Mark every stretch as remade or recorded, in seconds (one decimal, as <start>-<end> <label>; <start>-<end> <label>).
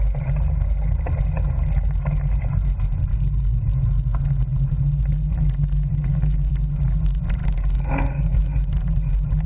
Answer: 0.0-3.1 recorded; 3.1-3.8 remade; 3.8-5.9 recorded; 5.9-6.5 remade; 6.5-7.4 recorded; 7.4-8.4 remade; 8.4-9.5 recorded